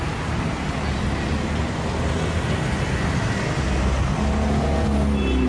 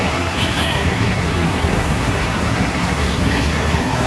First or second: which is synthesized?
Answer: second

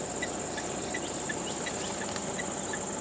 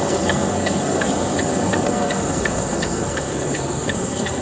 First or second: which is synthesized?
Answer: second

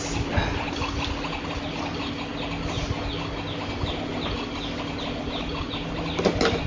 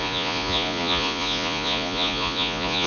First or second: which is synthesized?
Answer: second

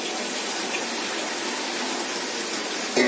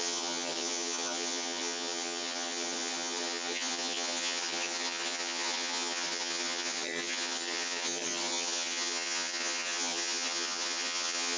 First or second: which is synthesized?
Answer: second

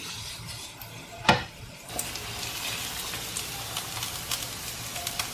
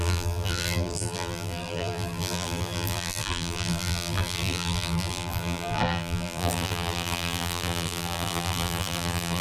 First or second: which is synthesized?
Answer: second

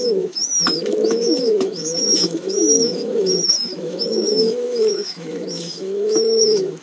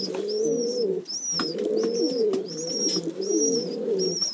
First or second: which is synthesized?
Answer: first